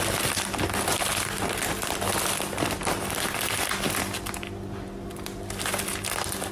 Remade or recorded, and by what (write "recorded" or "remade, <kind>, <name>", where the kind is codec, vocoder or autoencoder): recorded